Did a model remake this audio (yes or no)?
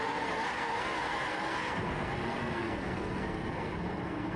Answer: yes